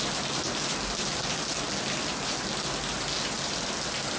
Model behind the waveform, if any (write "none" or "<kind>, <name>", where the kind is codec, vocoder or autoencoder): none